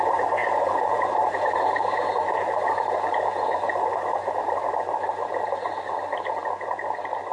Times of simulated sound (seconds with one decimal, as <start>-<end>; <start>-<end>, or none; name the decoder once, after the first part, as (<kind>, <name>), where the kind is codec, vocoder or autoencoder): 0.4-4.7 (vocoder, BigVGAN v2)